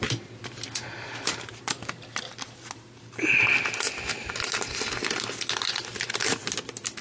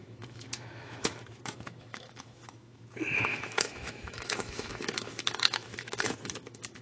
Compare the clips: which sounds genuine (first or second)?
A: first